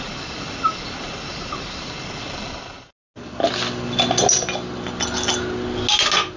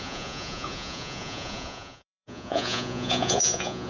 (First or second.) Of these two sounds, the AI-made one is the second